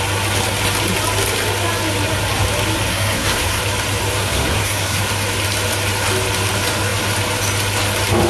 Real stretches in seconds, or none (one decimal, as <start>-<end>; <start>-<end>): 0.0-2.9; 3.6-4.2; 5.0-8.3